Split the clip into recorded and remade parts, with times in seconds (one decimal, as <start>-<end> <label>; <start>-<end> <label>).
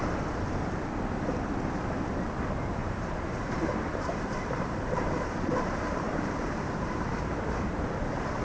0.0-2.8 recorded; 2.8-7.8 remade; 7.8-8.4 recorded